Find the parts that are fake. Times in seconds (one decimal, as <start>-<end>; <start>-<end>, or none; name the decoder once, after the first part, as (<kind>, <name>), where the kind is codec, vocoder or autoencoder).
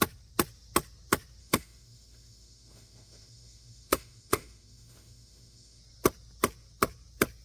1.4-5.8 (autoencoder, DAC-VAE)